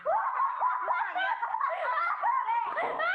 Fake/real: real